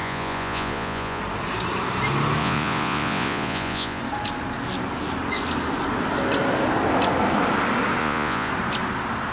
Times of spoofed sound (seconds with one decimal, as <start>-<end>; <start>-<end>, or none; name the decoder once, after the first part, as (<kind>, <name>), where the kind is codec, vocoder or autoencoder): 0.0-1.2 (vocoder, Vocos); 2.4-4.0; 8.0-8.5

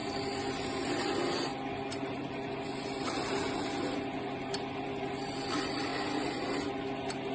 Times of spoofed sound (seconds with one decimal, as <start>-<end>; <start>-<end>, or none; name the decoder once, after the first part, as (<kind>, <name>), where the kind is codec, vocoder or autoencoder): none